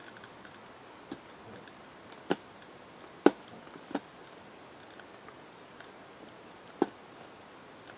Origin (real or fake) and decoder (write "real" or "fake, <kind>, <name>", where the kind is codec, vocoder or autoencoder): real